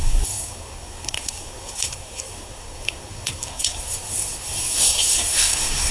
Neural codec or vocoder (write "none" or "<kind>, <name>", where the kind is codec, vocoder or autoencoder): codec, SNAC